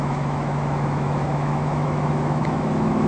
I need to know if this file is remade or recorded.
remade